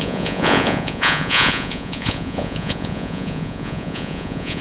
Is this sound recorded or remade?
remade